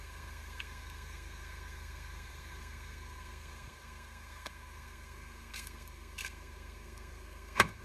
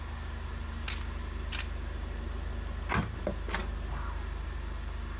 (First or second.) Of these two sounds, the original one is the second